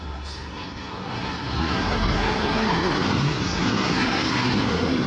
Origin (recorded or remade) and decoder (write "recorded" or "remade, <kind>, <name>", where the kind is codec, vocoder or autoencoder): remade, codec, SNAC